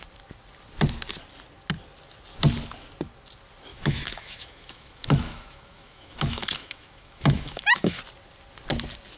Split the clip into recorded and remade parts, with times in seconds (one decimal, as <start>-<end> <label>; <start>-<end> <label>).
0.0-3.7 recorded; 3.7-8.0 remade; 8.0-9.2 recorded